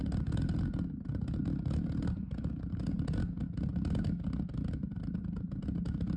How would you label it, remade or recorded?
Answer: recorded